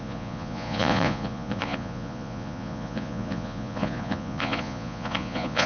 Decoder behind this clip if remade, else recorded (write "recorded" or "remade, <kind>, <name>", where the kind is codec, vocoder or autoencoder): remade, vocoder, Vocos